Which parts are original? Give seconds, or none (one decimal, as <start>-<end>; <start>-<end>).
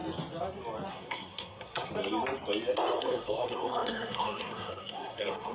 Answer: 0.0-0.9; 1.9-3.0